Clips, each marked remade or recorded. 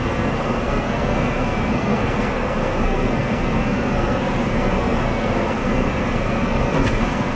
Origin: remade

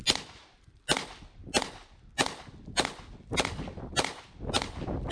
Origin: recorded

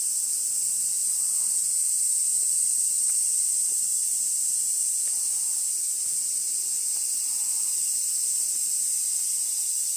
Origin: recorded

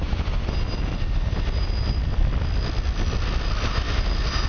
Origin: recorded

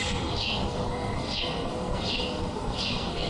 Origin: remade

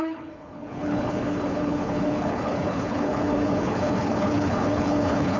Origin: remade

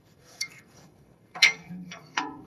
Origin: remade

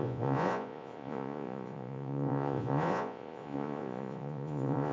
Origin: remade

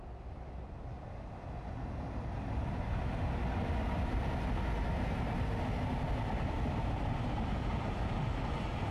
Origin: recorded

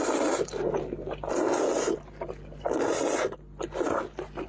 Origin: recorded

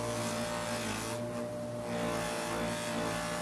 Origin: recorded